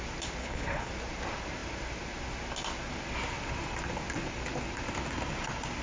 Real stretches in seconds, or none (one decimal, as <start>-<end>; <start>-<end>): 0.0-0.4; 0.9-5.8

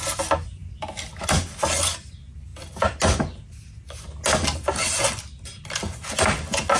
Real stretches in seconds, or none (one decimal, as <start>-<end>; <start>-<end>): 0.0-6.8

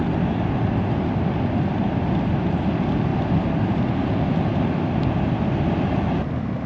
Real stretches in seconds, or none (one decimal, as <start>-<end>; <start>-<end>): 0.0-6.7

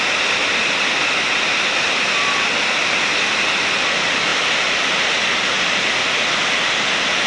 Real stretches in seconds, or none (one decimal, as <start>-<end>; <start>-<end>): 0.0-7.3